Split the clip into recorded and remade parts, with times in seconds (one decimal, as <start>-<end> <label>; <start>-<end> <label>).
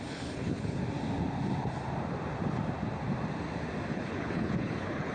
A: 0.0-0.8 remade; 0.8-3.9 recorded; 3.9-5.1 remade